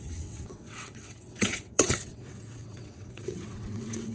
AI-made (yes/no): yes